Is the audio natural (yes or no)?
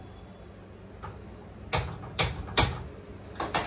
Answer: yes